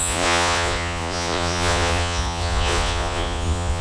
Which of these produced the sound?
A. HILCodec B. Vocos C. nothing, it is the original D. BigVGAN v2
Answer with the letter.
B